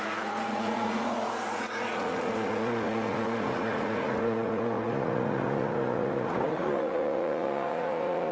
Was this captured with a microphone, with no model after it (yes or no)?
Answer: no